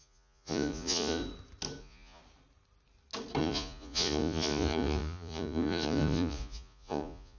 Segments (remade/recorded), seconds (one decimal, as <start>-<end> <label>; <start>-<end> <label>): 0.0-1.2 remade; 1.2-1.8 recorded; 1.8-2.2 remade; 2.2-3.4 recorded; 3.4-7.4 remade